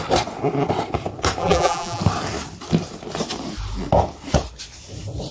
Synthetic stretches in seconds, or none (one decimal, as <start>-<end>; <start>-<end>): 1.4-2.0